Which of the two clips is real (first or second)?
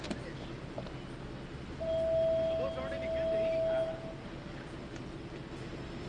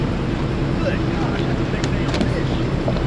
first